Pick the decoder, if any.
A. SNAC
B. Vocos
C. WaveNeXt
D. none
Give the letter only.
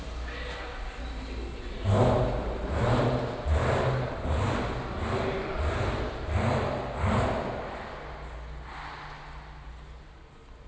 D